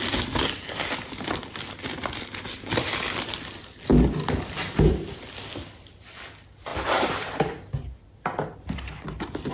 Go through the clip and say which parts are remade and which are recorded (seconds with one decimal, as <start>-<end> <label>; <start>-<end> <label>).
0.0-9.5 recorded